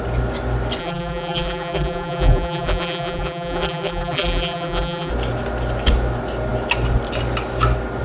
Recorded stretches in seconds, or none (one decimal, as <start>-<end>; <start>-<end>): 0.0-0.8; 5.1-8.0